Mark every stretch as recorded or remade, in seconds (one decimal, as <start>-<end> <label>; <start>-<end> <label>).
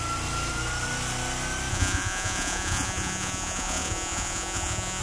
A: 0.0-1.7 recorded; 1.7-5.0 remade